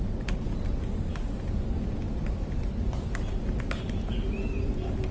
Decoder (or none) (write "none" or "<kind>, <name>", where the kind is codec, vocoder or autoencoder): none